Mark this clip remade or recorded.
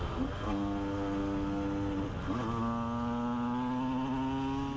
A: recorded